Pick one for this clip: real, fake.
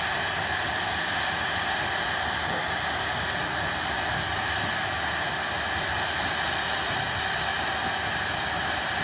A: real